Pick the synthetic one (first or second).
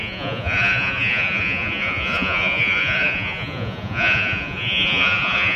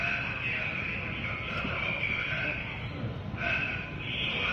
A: first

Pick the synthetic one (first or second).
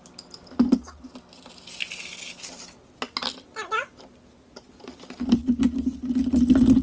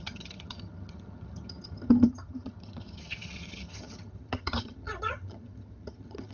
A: second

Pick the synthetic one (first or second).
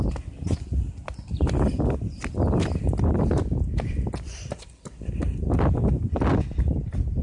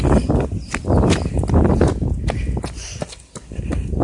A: first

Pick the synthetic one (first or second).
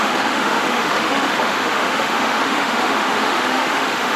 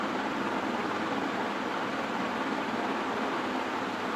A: first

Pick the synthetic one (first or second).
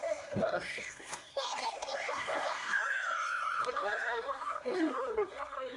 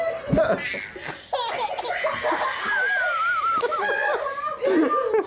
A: first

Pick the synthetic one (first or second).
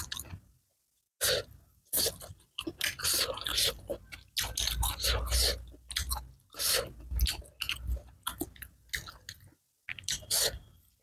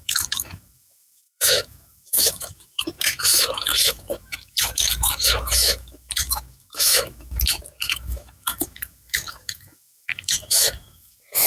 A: second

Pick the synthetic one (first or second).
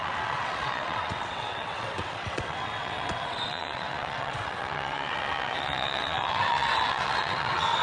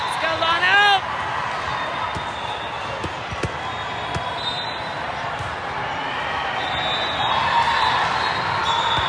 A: first